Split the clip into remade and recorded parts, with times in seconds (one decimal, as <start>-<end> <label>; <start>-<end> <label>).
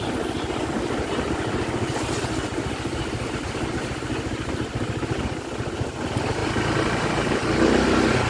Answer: 0.0-8.3 recorded